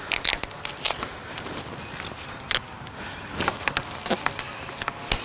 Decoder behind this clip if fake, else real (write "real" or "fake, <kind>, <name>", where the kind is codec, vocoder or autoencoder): real